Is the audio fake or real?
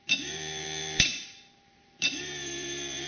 fake